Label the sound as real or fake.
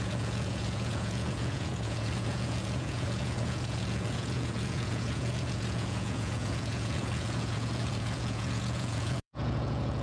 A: fake